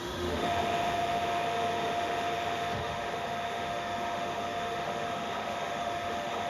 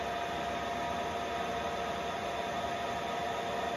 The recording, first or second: second